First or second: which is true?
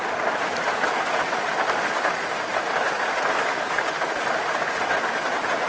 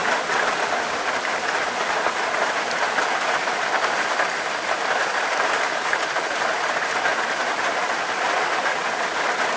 first